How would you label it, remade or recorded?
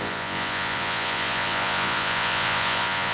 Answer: remade